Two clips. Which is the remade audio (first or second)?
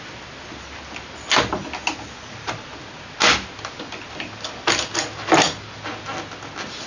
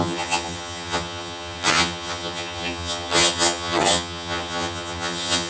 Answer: second